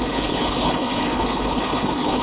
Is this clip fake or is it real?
fake